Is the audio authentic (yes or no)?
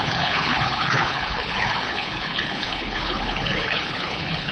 no